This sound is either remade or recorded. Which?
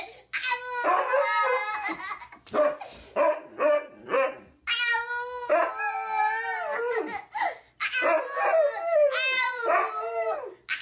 recorded